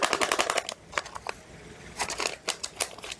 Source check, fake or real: real